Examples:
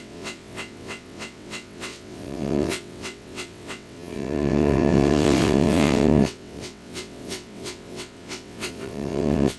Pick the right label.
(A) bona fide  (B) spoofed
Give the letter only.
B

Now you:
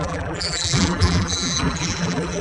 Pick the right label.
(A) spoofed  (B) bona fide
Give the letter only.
A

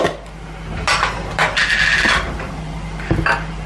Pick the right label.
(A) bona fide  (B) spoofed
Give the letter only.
A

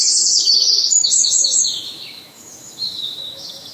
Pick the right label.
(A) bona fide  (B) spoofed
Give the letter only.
B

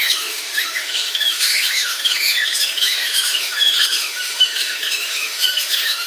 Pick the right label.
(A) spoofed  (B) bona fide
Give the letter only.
A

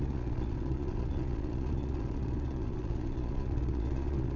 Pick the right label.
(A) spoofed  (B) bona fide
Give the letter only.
A